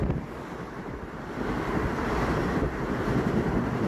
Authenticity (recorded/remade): recorded